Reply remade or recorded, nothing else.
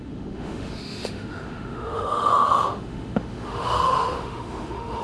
remade